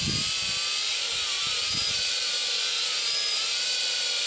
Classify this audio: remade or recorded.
recorded